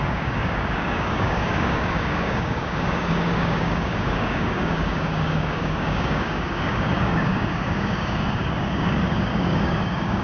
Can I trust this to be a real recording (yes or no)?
no